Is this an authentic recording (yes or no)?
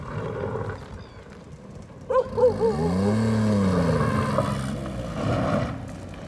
yes